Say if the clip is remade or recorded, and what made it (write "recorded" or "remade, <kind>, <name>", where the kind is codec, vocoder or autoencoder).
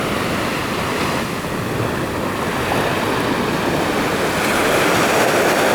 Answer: remade, vocoder, BigVGAN v2